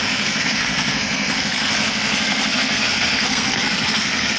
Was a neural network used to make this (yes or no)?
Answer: yes